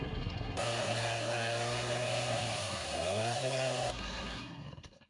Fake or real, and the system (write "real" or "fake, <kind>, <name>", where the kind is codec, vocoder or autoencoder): fake, codec, SNAC